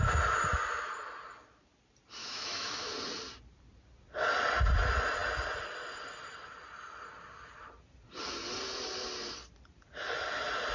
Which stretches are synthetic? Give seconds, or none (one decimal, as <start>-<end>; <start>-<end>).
2.2-2.9